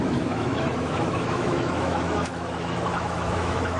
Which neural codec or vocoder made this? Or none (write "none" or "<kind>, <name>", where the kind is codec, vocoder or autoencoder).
autoencoder, DAC-VAE